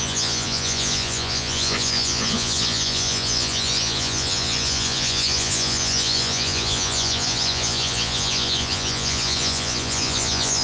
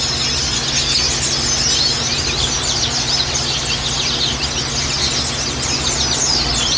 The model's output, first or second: first